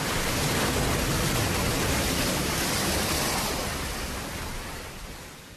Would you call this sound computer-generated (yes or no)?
no